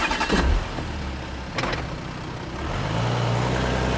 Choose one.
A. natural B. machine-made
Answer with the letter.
A